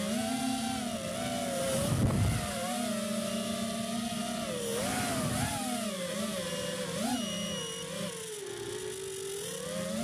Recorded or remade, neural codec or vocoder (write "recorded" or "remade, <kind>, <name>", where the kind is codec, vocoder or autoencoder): recorded